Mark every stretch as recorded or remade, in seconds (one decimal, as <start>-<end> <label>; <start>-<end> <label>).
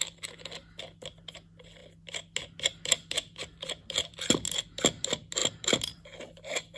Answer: 0.0-6.8 recorded